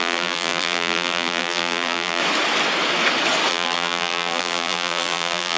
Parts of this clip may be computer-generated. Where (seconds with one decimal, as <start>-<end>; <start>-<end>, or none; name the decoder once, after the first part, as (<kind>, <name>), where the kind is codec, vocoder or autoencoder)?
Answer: 0.0-2.2 (vocoder, BigVGAN v2); 3.5-5.6

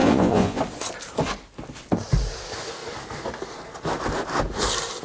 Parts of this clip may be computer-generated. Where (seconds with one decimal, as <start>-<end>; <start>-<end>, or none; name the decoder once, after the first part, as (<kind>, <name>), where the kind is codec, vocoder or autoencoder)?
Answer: 0.0-0.6 (vocoder, Vocos)

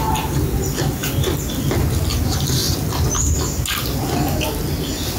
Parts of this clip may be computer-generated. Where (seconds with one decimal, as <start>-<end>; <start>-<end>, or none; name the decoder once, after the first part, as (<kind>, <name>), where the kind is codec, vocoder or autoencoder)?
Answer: none

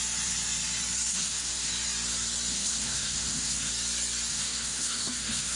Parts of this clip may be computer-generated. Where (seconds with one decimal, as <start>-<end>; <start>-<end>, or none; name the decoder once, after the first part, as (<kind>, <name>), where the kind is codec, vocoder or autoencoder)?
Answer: 1.1-1.7 (codec, SNAC); 2.5-3.7; 4.3-5.6

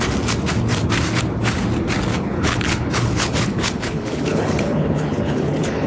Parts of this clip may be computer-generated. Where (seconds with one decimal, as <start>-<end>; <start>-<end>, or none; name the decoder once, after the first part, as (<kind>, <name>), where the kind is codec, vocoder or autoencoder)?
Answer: 2.1-5.9 (codec, HILCodec)

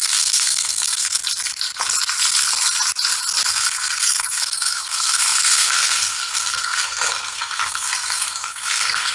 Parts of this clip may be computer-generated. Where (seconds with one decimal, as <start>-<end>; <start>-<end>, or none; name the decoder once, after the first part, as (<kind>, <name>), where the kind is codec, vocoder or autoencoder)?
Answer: 0.0-1.2 (codec, SNAC); 3.5-9.1